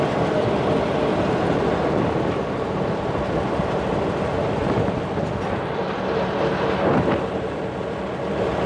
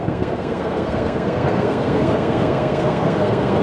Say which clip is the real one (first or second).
first